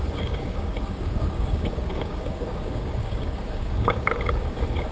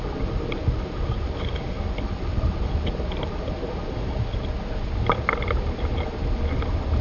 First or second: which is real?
second